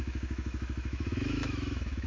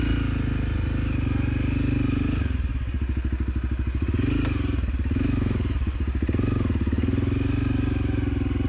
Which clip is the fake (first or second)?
first